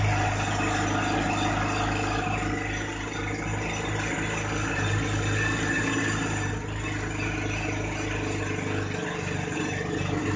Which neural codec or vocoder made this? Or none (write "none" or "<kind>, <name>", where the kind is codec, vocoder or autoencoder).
none